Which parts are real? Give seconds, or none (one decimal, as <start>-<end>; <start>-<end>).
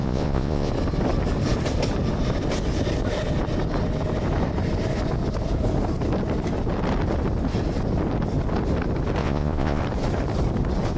0.7-9.2; 9.8-11.0